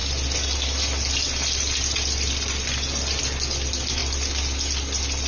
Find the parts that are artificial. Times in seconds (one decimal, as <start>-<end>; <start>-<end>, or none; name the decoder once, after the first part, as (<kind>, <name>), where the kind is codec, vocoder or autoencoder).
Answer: none